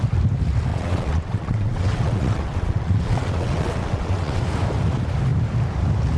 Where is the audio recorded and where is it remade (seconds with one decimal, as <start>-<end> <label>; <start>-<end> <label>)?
0.0-0.7 recorded; 0.7-4.4 remade; 4.4-6.2 recorded